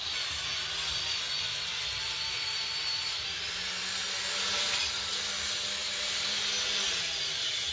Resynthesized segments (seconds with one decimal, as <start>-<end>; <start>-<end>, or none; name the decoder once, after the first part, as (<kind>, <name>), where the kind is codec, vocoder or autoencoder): 1.5-3.6 (vocoder, BigVGAN v2); 5.8-6.5